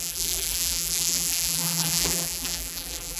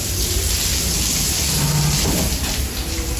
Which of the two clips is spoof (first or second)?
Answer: first